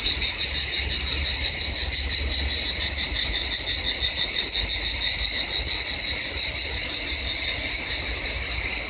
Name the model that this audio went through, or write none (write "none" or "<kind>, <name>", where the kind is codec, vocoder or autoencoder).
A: none